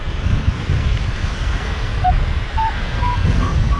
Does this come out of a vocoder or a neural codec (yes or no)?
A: yes